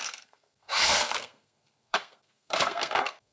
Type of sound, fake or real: fake